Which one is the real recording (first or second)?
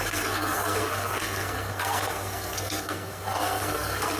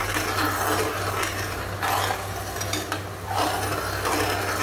second